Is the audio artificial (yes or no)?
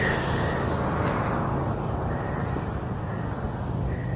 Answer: no